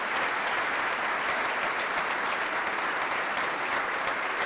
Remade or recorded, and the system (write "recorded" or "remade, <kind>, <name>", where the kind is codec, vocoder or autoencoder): recorded